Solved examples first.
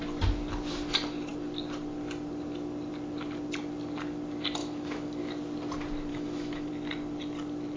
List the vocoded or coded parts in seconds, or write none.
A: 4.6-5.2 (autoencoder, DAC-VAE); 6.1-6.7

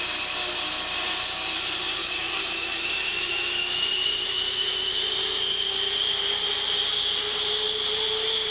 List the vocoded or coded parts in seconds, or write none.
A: 2.0-4.9 (autoencoder, DAC-VAE)

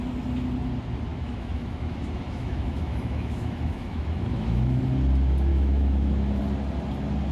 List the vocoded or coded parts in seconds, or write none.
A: 1.1-4.8 (autoencoder, DAC-VAE); 5.5-6.4

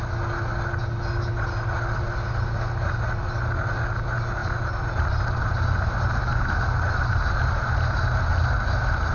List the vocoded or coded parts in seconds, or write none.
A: none